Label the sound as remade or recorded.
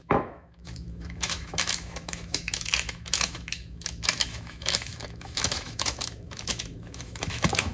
remade